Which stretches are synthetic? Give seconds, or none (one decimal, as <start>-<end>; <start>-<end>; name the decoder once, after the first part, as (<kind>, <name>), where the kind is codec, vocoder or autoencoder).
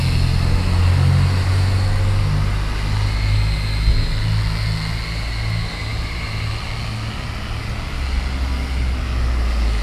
none